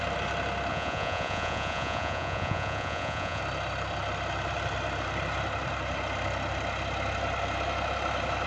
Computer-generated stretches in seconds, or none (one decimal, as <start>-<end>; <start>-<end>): 0.7-3.4